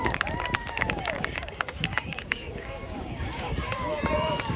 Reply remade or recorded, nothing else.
remade